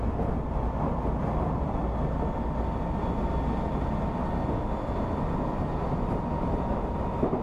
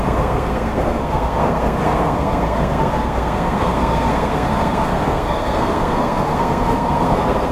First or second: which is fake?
second